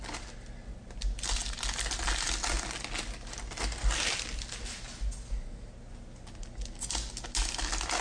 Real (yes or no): yes